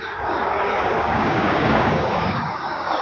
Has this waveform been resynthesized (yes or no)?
yes